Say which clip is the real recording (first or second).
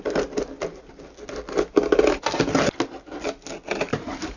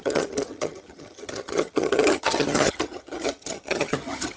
first